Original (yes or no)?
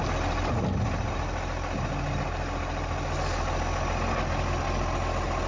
yes